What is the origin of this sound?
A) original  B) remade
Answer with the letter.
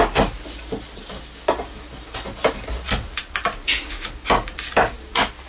A